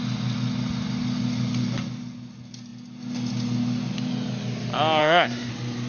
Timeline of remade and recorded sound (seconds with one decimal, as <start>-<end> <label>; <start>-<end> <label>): 0.0-5.0 recorded; 5.0-5.5 remade; 5.5-5.9 recorded